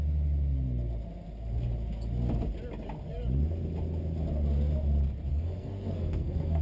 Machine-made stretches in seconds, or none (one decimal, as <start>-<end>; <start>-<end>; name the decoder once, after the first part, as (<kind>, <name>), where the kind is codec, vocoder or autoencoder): 5.3-6.6 (codec, SNAC)